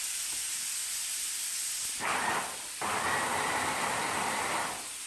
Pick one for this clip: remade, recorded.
recorded